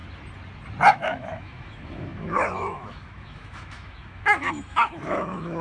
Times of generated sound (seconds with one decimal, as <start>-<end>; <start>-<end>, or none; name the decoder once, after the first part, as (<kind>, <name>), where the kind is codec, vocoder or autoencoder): 0.9-5.6 (autoencoder, DAC-VAE)